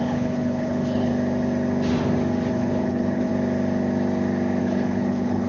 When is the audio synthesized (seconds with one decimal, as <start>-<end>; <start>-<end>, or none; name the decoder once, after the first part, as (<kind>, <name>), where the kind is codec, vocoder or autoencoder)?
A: 0.0-1.1 (codec, HILCodec); 2.5-3.3; 4.6-5.5